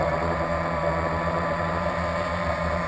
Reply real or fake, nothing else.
fake